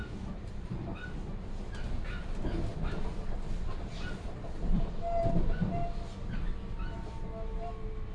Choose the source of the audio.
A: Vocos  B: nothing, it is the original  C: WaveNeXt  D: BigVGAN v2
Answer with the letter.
B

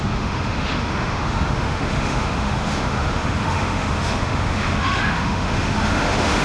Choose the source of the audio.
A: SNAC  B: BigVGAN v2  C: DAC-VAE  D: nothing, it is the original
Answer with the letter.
C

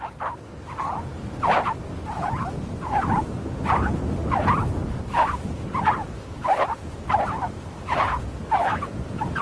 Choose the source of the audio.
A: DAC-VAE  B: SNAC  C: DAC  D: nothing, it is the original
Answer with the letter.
D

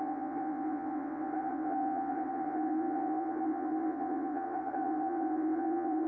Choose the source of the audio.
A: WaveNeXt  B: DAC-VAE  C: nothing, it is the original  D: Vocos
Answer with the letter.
A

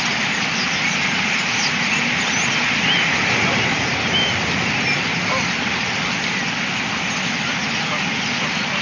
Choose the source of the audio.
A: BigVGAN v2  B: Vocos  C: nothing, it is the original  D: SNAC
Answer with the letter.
C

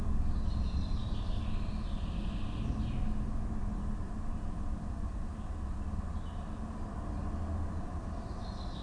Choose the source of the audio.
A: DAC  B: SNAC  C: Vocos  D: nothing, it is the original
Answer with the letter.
D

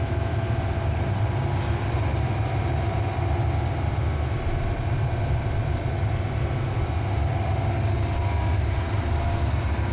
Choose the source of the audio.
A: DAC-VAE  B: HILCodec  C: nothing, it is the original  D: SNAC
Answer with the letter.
C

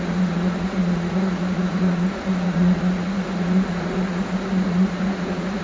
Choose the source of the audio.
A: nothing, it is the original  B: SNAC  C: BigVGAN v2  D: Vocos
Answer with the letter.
D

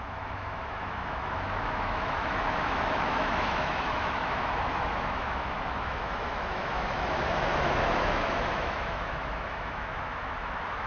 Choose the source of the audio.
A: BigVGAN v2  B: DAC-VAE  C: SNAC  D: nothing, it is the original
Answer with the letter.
B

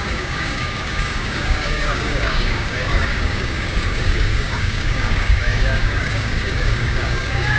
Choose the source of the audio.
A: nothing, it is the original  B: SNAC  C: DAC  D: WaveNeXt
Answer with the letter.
C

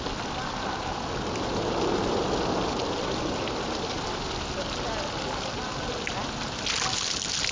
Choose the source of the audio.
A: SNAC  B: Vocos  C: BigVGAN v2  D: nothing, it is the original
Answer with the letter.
D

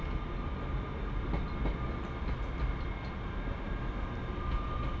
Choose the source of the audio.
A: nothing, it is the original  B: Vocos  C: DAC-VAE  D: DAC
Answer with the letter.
A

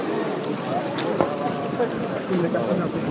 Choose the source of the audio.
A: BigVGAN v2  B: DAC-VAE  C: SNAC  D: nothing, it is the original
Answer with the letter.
A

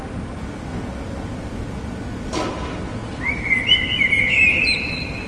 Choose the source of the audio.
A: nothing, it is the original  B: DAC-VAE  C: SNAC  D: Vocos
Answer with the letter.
A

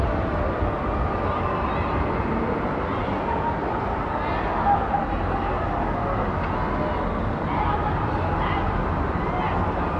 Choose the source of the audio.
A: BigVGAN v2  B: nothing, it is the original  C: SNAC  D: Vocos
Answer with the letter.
B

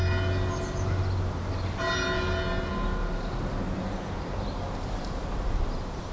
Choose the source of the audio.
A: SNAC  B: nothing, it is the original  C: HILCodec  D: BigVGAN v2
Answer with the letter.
B